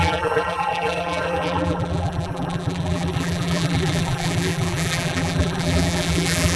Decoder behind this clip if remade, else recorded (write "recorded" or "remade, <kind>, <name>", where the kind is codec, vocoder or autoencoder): remade, vocoder, BigVGAN v2